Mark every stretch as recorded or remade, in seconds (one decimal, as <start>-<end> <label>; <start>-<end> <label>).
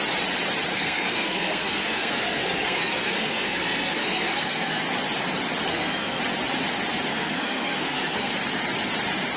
0.0-0.7 recorded; 0.7-4.8 remade; 4.8-5.7 recorded; 5.7-6.2 remade; 6.2-7.1 recorded; 7.1-8.3 remade; 8.3-9.4 recorded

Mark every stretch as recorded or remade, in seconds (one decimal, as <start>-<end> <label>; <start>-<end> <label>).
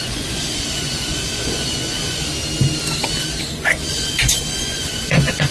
0.0-2.3 remade; 2.3-3.4 recorded; 3.4-5.5 remade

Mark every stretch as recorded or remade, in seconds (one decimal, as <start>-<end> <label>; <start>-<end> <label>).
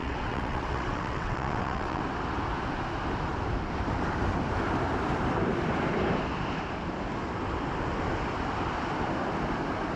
0.0-2.0 remade; 2.0-10.0 recorded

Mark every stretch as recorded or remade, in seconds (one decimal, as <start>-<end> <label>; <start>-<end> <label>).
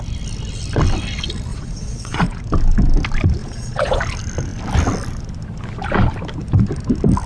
0.0-1.5 recorded; 1.5-2.4 remade; 2.4-3.4 recorded; 3.4-4.0 remade; 4.0-7.3 recorded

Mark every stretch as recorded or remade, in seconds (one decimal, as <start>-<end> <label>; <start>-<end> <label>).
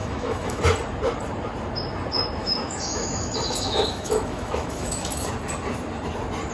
0.0-0.6 remade; 0.6-2.4 recorded; 2.4-5.3 remade; 5.3-6.5 recorded